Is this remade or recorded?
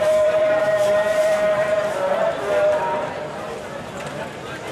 remade